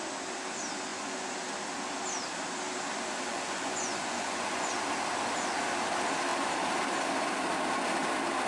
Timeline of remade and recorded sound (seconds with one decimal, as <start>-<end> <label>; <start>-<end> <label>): 0.0-0.9 recorded; 0.9-1.4 remade; 1.4-3.3 recorded; 3.3-4.7 remade; 4.7-8.5 recorded